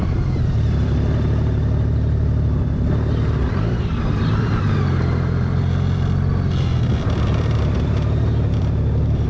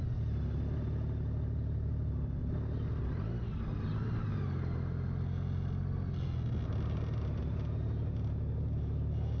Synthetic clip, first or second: first